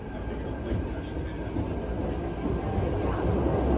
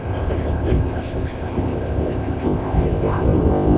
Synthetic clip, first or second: second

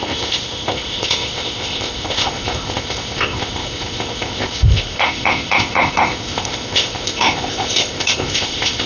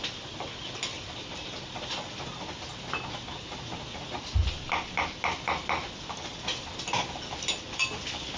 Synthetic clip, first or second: first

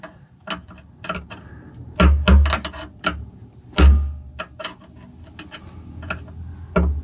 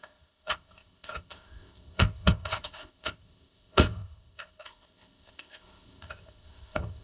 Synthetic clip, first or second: second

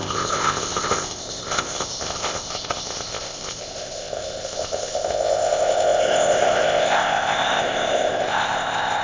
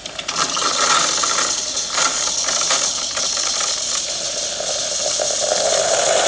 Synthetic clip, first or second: first